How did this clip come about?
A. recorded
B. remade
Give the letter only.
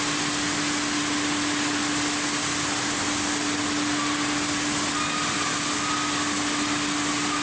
A